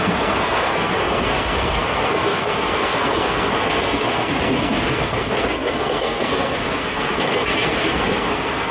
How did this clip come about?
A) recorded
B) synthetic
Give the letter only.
B